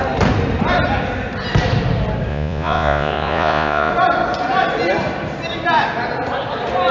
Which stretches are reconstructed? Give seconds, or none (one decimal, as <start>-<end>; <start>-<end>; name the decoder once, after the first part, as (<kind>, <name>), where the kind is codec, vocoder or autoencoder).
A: 2.3-3.9 (vocoder, Vocos)